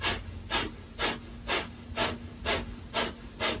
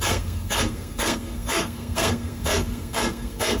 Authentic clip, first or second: first